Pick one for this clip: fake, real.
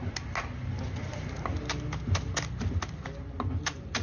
real